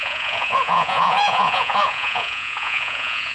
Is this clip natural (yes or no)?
no